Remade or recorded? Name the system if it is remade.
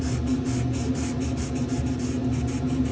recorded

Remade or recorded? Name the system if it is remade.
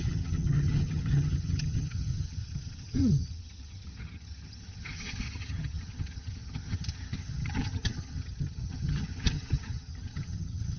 remade, vocoder, HiFi-GAN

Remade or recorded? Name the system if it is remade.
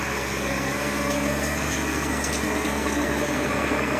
remade, codec, SNAC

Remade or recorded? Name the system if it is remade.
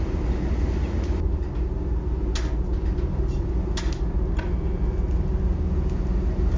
recorded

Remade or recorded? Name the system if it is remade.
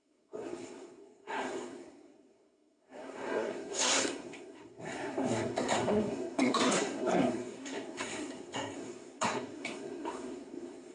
remade, codec, SNAC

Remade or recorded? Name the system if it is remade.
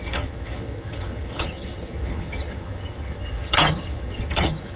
remade, vocoder, HiFi-GAN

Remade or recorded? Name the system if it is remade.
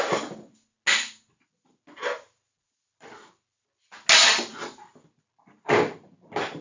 recorded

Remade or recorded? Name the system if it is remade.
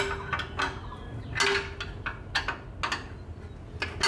recorded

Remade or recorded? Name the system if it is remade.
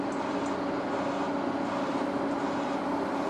recorded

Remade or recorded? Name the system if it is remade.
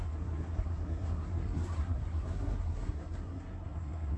remade, codec, SNAC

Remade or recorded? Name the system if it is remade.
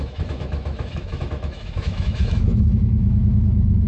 remade, autoencoder, DAC-VAE